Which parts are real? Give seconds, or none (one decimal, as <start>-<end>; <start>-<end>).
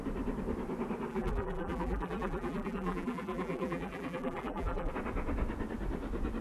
0.0-1.1; 4.9-6.4